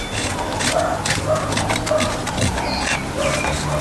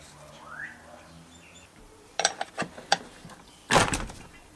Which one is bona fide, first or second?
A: first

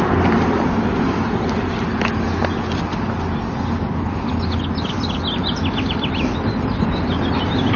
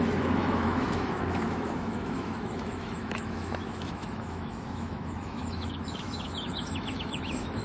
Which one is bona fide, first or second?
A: first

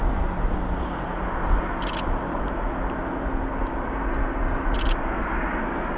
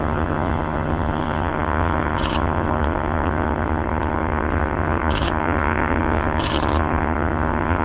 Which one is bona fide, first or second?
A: first